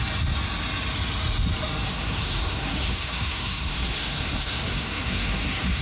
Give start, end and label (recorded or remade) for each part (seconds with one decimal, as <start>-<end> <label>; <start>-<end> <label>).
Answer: 0.0-1.9 recorded; 1.9-5.8 remade

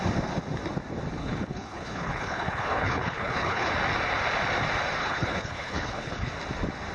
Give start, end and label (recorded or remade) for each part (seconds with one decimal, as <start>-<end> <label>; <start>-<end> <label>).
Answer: 0.0-1.2 recorded; 1.2-3.7 remade; 3.7-5.0 recorded; 5.0-6.3 remade; 6.3-6.9 recorded

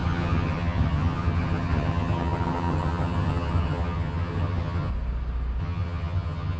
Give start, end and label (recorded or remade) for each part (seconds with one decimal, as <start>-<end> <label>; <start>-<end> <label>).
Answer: 0.0-4.9 remade; 4.9-5.6 recorded; 5.6-6.6 remade

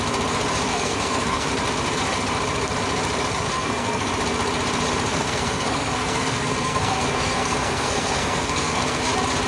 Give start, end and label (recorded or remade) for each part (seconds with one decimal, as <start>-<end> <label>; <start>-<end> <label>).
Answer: 0.0-0.7 recorded; 0.7-1.5 remade; 1.5-3.5 recorded; 3.5-4.1 remade; 4.1-5.1 recorded; 5.1-9.0 remade; 9.0-9.5 recorded

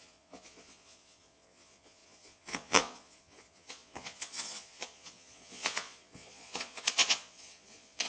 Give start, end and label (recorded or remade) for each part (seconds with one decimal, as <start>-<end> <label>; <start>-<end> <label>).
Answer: 0.0-8.1 remade

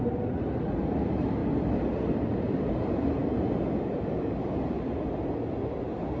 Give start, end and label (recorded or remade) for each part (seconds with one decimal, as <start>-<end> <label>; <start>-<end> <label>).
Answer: 0.0-6.2 recorded

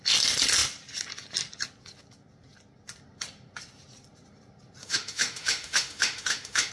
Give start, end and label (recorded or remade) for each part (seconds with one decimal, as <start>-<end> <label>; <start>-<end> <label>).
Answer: 0.0-4.8 recorded; 4.8-6.7 remade

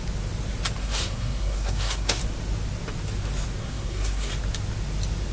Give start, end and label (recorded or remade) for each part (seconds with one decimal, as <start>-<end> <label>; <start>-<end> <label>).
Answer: 0.0-0.8 recorded; 0.8-2.2 remade; 2.2-3.6 recorded; 3.6-4.3 remade; 4.3-5.3 recorded